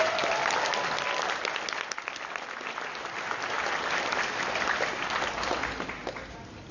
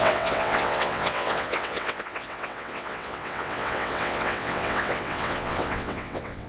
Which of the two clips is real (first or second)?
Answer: first